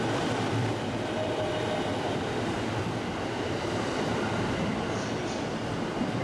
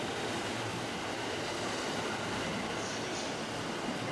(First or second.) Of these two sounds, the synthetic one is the first